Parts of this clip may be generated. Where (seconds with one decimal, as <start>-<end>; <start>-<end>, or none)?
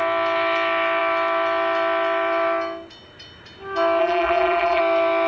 4.0-4.8